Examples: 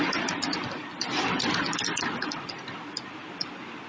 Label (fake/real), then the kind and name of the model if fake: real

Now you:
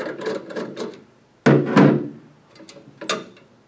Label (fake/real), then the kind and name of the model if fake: real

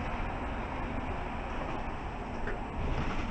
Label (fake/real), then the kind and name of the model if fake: real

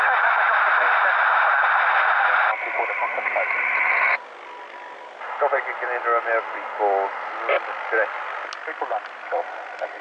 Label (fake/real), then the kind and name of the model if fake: real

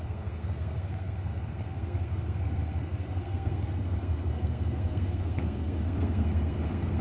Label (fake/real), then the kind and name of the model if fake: fake, codec, SNAC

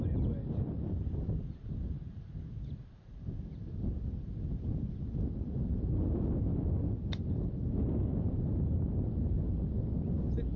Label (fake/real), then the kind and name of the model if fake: real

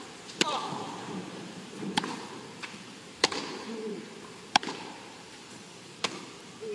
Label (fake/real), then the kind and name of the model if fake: fake, vocoder, BigVGAN v2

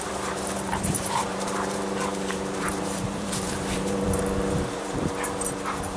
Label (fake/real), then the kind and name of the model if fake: fake, vocoder, BigVGAN v2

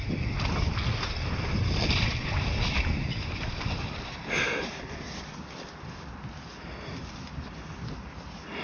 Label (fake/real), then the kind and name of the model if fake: real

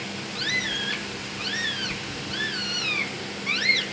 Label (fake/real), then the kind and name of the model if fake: real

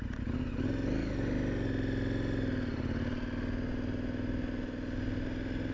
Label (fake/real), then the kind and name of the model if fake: real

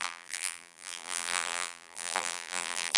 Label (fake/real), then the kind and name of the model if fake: fake, vocoder, BigVGAN v2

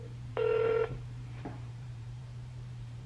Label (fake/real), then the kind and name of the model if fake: fake, vocoder, BigVGAN v2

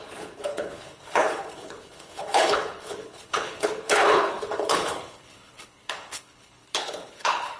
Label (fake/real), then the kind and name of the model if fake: fake, codec, HILCodec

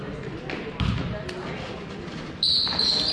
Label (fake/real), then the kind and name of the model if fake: real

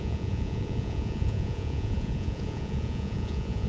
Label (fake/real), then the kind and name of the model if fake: fake, vocoder, Vocos